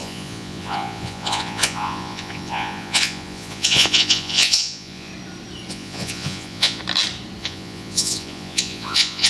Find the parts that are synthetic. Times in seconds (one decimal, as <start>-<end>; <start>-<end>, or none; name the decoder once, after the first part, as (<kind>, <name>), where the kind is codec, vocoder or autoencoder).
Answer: 0.0-5.1 (vocoder, Vocos); 5.7-6.8; 7.4-9.3